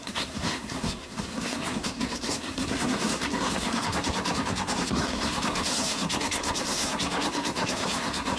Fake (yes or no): yes